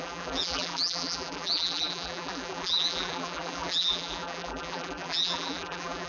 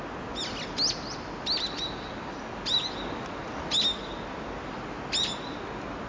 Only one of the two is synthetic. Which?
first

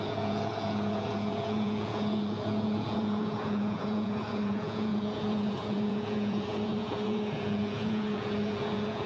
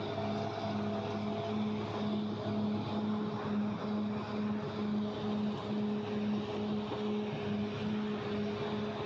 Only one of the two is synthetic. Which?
first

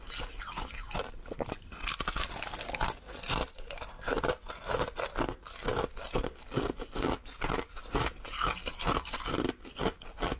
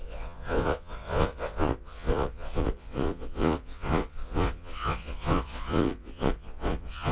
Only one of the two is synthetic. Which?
second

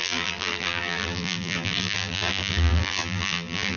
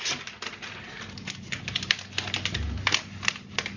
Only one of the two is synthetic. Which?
first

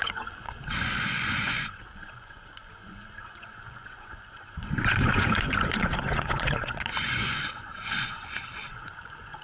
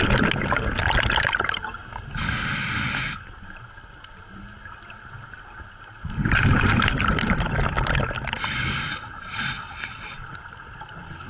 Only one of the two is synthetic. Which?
first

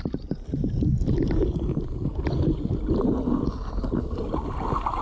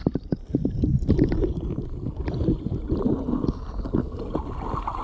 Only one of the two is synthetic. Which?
second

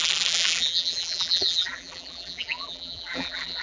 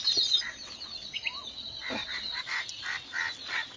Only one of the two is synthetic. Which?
first